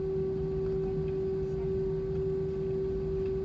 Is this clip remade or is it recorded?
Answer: recorded